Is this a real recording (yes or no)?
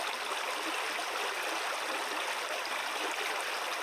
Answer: yes